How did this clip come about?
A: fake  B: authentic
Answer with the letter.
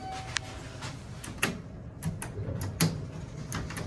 B